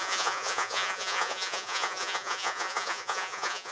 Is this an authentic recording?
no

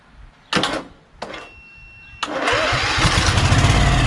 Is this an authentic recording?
yes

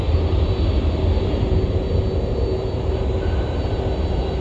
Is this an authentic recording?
yes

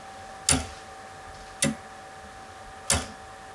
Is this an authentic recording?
yes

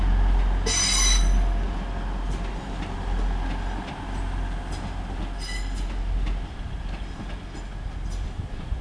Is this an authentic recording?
yes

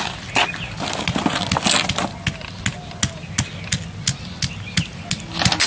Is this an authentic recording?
yes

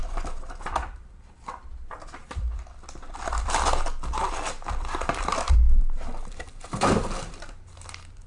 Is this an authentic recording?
no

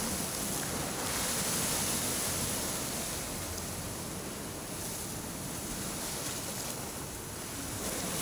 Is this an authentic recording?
yes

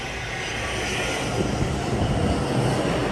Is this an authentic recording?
yes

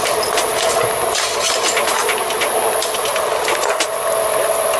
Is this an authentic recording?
yes